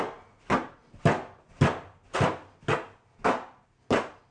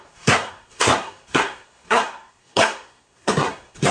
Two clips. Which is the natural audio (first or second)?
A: first